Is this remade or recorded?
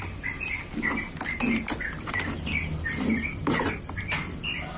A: recorded